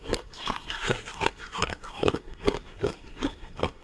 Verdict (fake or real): fake